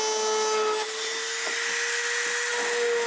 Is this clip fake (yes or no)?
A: no